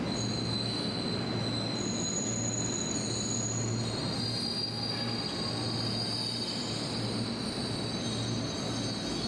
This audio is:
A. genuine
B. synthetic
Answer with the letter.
A